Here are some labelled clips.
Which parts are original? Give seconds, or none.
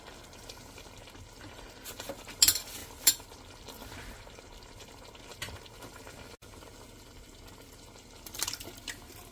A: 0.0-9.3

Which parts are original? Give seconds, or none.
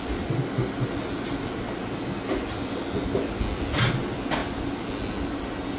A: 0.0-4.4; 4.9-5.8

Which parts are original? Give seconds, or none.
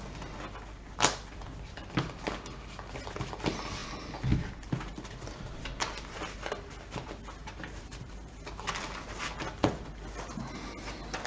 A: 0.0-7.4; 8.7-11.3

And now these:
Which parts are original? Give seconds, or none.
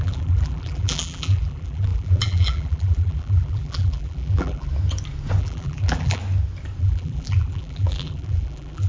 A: 4.7-5.4; 6.2-6.8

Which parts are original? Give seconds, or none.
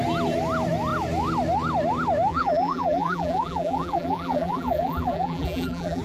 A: 0.0-2.3